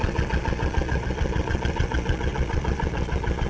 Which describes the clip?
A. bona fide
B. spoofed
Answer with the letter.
B